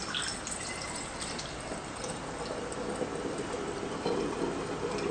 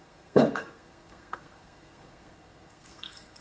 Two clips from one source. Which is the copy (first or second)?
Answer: second